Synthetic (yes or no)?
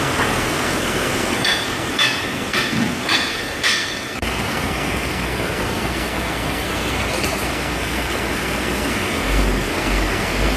yes